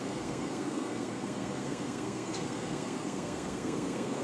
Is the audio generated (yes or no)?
yes